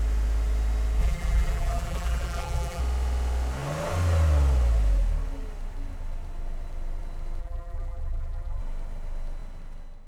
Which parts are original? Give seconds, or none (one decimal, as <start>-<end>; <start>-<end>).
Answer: 0.0-1.0; 2.8-7.4; 8.6-10.1